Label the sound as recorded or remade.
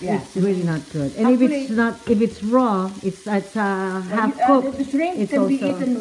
recorded